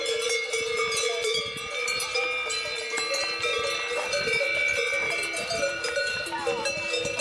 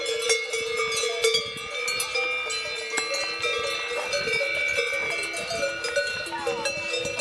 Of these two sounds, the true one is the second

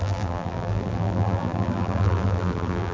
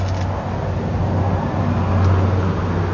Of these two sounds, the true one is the second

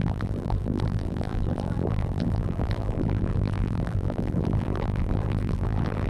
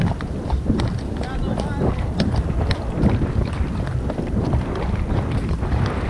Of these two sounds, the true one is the second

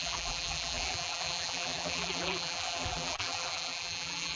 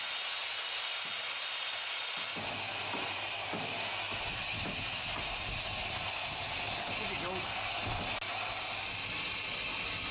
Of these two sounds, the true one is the second